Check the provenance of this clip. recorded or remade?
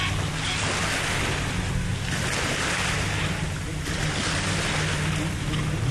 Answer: recorded